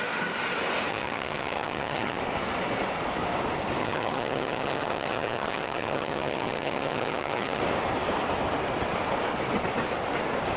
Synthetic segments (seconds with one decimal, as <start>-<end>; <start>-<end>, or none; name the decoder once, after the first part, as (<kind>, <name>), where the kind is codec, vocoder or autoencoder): 0.9-2.2 (vocoder, HiFi-GAN); 3.8-7.6